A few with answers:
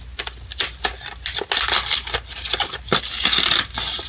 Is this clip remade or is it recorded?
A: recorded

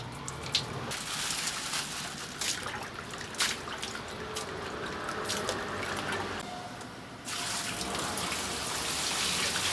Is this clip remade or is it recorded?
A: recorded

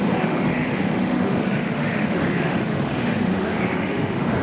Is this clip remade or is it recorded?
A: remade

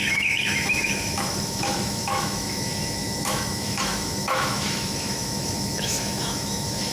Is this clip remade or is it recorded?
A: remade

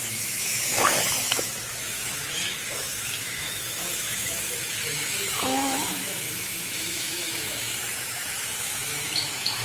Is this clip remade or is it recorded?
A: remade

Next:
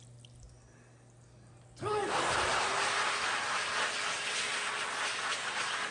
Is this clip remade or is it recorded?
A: recorded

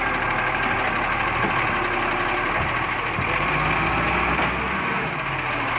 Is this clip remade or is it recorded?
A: recorded